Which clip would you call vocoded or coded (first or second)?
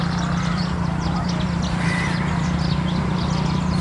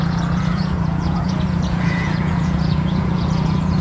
second